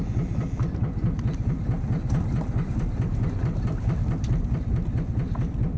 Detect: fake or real real